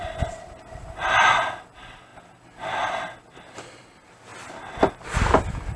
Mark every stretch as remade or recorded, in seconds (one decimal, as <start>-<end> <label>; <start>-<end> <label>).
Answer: 0.0-5.8 recorded